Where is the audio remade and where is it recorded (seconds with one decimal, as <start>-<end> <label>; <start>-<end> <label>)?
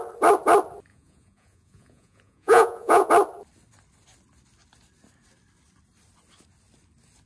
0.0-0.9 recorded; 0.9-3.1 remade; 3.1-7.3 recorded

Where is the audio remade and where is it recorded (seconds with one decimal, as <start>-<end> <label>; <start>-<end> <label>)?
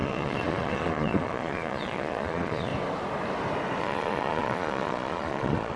0.0-2.7 remade; 2.7-3.8 recorded; 3.8-5.8 remade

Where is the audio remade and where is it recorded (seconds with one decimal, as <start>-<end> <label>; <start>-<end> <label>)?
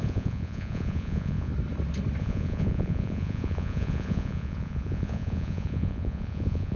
0.0-1.5 remade; 1.5-2.2 recorded; 2.2-6.8 remade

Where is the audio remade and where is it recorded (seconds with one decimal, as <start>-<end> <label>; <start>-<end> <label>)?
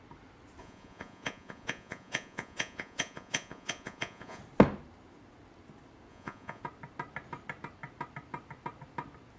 0.0-0.6 recorded; 0.6-4.4 remade; 4.4-6.1 recorded; 6.1-6.6 remade; 6.6-9.4 recorded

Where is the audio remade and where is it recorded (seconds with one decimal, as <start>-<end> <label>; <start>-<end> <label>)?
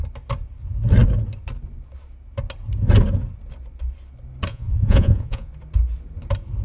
0.0-4.5 recorded; 4.5-5.5 remade; 5.5-6.6 recorded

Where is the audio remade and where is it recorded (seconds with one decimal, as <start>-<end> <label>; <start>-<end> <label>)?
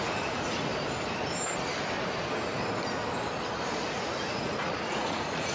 0.0-0.7 remade; 0.7-3.9 recorded; 3.9-5.5 remade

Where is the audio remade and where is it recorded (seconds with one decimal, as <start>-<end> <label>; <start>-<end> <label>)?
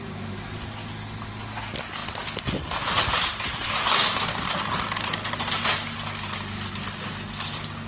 0.0-7.9 recorded